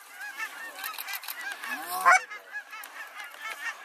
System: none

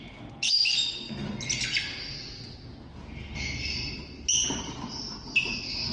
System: none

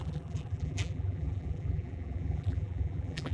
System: vocoder, BigVGAN v2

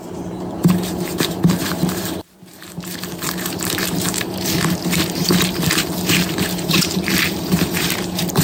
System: vocoder, BigVGAN v2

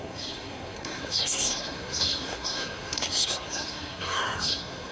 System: codec, SNAC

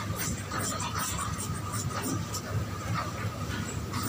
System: none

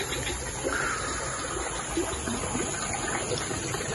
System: none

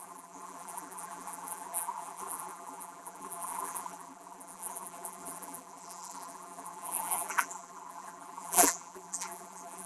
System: vocoder, BigVGAN v2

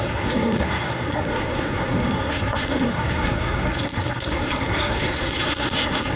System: codec, SNAC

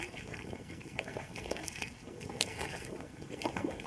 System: codec, SNAC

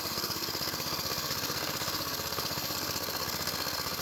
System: codec, SNAC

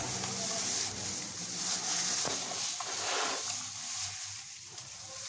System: none